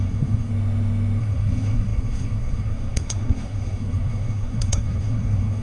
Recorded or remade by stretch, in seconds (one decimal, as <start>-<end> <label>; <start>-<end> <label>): 0.0-0.5 remade; 0.5-1.2 recorded; 1.2-5.6 remade